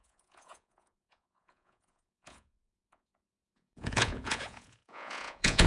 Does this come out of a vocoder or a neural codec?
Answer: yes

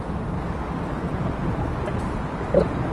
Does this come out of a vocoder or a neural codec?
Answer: no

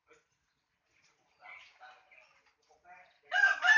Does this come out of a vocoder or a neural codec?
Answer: no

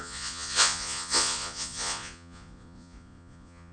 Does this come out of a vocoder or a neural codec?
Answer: yes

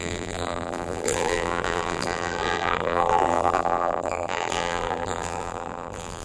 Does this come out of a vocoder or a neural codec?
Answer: yes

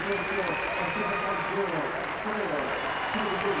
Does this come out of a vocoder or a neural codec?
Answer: no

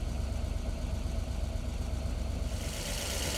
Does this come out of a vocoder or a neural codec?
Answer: no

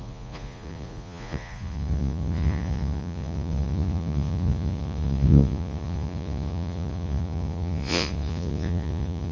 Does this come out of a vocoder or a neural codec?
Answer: yes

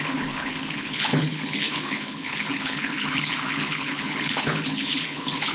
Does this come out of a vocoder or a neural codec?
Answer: yes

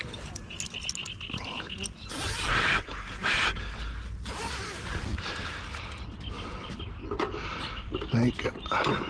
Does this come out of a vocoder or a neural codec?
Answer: no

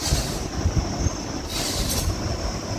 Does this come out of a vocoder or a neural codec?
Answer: no